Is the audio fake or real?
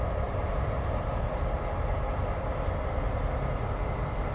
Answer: fake